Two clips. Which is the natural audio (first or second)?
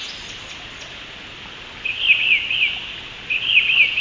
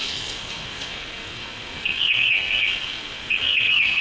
first